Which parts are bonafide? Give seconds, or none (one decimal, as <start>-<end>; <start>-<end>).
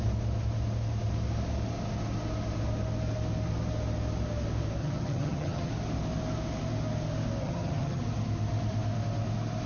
0.0-4.8; 5.7-7.4; 8.0-9.7